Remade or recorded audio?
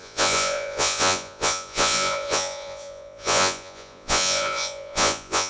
remade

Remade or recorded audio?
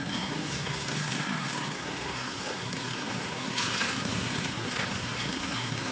remade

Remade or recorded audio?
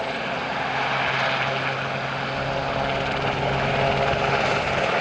recorded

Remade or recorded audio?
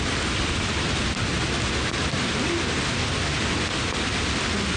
recorded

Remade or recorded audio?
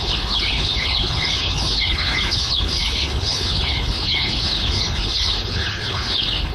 remade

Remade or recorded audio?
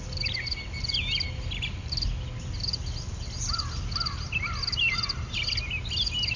recorded